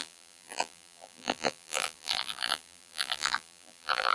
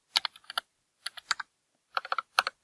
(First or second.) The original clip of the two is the second